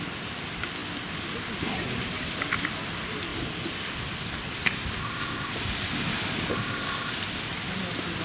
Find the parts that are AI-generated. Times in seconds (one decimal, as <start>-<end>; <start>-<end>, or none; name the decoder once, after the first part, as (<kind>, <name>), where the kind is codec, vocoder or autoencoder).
5.0-5.5 (codec, ZipCodec); 6.5-7.1